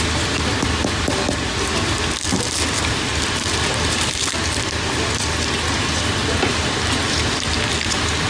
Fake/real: real